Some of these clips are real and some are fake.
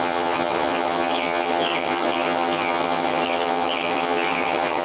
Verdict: fake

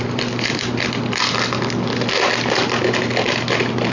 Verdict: real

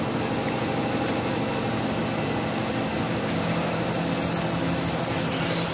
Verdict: real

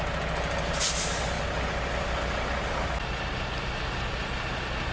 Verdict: real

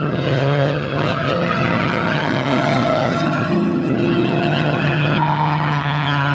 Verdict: fake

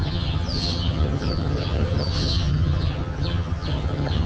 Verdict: fake